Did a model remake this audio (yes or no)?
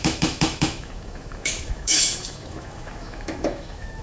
yes